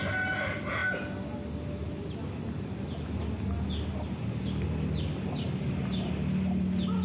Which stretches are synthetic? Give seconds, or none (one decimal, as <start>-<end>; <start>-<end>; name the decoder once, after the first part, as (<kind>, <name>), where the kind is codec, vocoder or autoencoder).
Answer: none

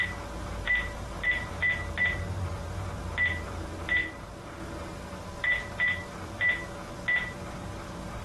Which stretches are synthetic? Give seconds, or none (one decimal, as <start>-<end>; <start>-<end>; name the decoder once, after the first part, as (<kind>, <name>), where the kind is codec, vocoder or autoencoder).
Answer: 0.4-1.7 (vocoder, BigVGAN v2); 7.2-8.2

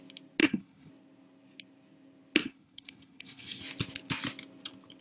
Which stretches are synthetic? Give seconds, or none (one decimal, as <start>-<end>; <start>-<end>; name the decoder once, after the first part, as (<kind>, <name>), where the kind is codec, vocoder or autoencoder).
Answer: 0.4-0.9 (codec, HILCodec); 2.4-3.6

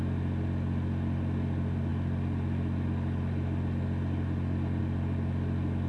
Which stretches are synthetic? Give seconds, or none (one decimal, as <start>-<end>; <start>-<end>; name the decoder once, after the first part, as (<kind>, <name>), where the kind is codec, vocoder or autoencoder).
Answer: none